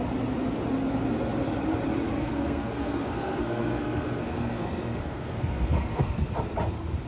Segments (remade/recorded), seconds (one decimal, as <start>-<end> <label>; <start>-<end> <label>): 0.0-2.1 recorded; 2.1-6.4 remade; 6.4-7.1 recorded